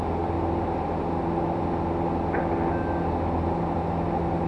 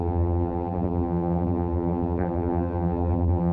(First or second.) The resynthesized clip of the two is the second